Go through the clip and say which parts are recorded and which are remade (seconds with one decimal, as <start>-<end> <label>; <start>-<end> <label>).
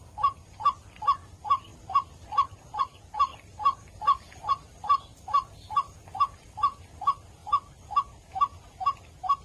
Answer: 0.0-3.3 recorded; 3.3-4.5 remade; 4.5-5.1 recorded; 5.1-5.7 remade; 5.7-9.4 recorded